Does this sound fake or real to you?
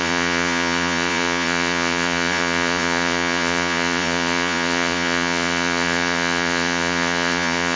fake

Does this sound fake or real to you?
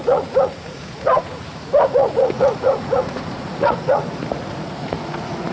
fake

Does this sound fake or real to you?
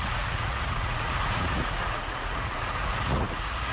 fake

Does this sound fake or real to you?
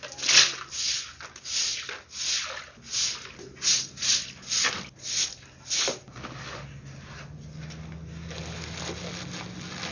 real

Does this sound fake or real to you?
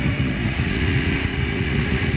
fake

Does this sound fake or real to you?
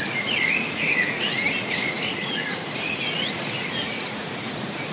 fake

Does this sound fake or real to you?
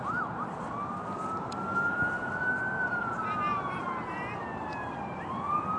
real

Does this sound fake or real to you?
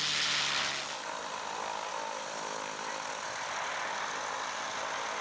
real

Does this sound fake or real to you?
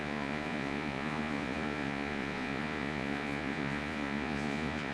fake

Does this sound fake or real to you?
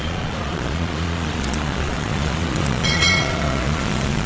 fake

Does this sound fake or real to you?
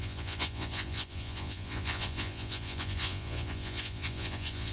fake